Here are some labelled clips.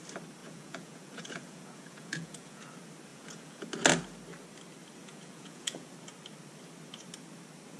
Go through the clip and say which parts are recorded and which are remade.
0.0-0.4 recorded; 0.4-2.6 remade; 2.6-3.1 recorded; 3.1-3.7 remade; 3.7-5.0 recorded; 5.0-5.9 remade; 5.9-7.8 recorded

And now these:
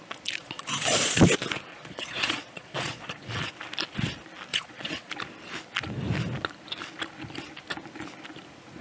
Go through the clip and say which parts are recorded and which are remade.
0.0-0.4 recorded; 0.4-1.2 remade; 1.2-1.7 recorded; 1.7-3.5 remade; 3.5-4.5 recorded; 4.5-5.1 remade; 5.1-8.8 recorded